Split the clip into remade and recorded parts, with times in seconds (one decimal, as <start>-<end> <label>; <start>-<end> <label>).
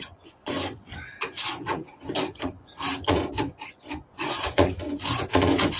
0.0-5.8 remade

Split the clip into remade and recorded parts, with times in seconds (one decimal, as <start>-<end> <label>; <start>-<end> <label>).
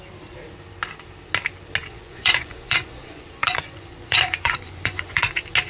0.0-1.8 recorded; 1.8-5.2 remade; 5.2-5.7 recorded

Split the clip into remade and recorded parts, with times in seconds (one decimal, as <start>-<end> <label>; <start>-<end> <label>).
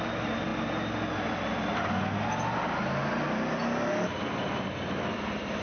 0.0-5.6 recorded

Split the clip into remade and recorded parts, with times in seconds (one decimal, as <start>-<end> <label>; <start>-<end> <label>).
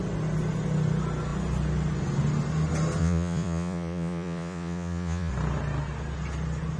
0.0-3.0 recorded; 3.0-5.3 remade; 5.3-6.8 recorded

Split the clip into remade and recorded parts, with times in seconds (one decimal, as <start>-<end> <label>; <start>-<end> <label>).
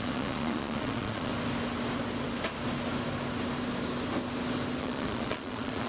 0.0-1.3 remade; 1.3-4.8 recorded; 4.8-5.9 remade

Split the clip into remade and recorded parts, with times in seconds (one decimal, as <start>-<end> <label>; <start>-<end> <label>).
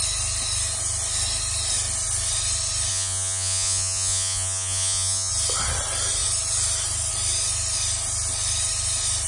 0.0-2.9 recorded; 2.9-5.3 remade; 5.3-9.3 recorded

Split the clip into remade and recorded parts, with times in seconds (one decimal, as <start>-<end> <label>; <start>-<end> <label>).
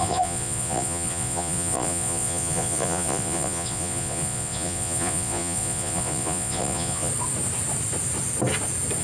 0.0-7.1 remade; 7.1-9.0 recorded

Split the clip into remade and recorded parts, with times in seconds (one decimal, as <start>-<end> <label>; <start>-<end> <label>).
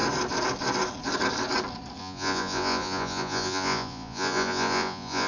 0.0-2.0 recorded; 2.0-5.3 remade